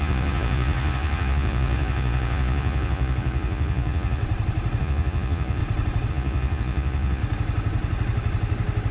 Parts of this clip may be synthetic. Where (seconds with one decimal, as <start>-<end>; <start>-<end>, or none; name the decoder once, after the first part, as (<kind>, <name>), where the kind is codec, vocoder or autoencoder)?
0.0-4.2 (vocoder, Vocos); 4.8-5.6; 6.1-7.2